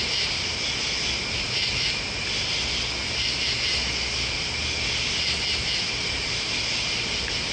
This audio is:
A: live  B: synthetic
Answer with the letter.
A